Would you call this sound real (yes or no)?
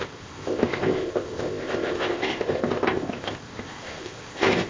no